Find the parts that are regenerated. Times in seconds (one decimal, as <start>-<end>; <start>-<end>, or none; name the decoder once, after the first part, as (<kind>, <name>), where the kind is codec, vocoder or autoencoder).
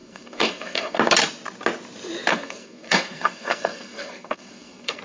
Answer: 0.0-1.0 (codec, SNAC); 2.3-5.0